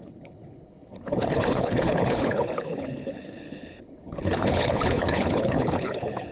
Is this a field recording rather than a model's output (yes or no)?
no